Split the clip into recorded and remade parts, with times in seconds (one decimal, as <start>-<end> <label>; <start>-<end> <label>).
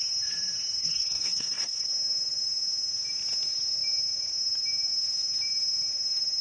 0.0-0.8 recorded; 0.8-1.9 remade; 1.9-6.4 recorded